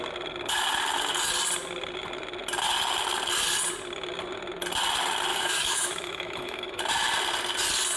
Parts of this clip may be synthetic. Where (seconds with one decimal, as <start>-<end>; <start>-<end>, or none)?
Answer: 5.3-6.8

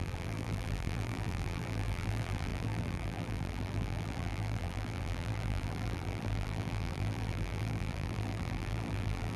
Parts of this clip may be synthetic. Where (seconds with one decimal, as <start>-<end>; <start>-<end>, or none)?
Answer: 0.0-9.4

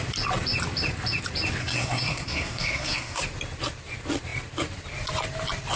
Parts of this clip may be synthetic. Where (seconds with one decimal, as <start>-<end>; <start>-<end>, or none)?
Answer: 1.6-3.2

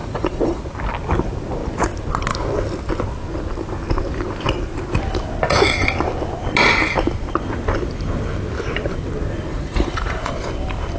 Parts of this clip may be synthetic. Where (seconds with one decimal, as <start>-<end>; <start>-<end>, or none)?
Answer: 0.0-0.6; 9.5-10.3

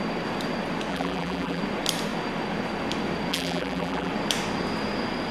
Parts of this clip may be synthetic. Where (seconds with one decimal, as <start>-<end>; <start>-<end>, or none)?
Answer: 0.9-1.6; 3.3-4.1

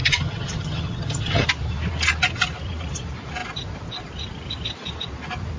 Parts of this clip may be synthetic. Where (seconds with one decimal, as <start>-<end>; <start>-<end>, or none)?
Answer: 0.0-1.5

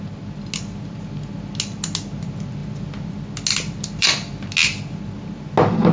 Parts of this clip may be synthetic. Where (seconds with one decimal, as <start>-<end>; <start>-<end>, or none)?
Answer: none

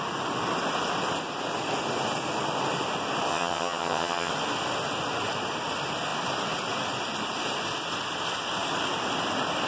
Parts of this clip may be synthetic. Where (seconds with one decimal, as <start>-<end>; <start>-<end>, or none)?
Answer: 3.3-4.3